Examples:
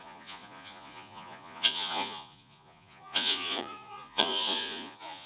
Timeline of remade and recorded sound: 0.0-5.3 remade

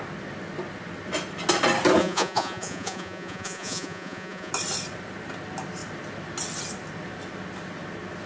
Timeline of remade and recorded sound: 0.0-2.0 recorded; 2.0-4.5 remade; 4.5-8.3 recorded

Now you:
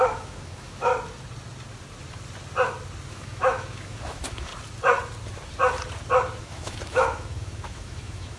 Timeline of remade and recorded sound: 0.0-0.9 remade; 0.9-3.1 recorded; 3.1-4.5 remade; 4.5-6.4 recorded; 6.4-8.4 remade

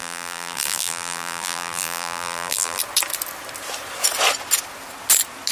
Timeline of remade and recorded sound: 0.0-2.8 remade; 2.8-5.5 recorded